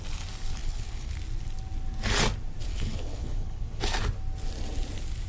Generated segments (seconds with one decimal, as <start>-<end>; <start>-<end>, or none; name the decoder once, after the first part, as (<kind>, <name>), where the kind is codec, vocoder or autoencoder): 0.6-1.1 (codec, HILCodec); 2.7-3.8